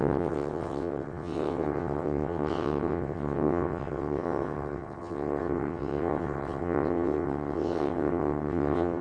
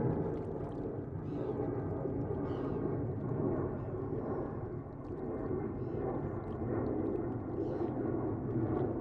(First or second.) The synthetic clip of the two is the first